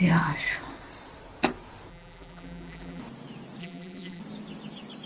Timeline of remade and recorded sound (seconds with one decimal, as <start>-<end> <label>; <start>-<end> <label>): 0.0-1.9 recorded; 1.9-3.0 remade; 3.0-3.6 recorded; 3.6-4.2 remade; 4.2-5.1 recorded